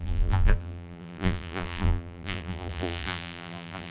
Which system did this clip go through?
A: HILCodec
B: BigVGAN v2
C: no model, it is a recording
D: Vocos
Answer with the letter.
B